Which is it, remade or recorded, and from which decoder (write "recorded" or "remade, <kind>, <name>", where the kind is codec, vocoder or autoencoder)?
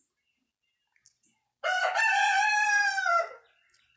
recorded